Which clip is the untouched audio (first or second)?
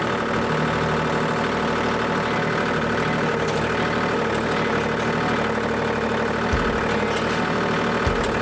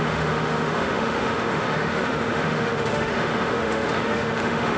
first